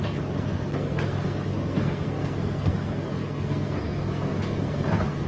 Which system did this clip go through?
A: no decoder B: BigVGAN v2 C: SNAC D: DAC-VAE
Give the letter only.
C